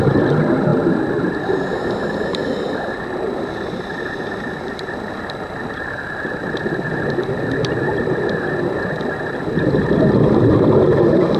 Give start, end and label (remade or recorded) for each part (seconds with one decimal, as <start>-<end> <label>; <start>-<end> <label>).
0.0-11.4 recorded